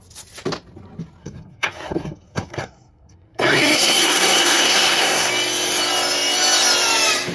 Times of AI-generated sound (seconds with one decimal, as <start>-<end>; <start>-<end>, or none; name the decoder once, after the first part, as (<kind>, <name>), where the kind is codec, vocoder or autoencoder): 1.2-5.3 (codec, SNAC)